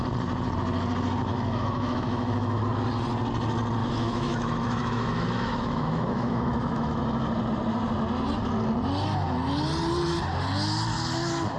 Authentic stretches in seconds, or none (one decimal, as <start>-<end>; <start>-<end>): 0.0-1.3; 2.6-3.8; 7.0-11.6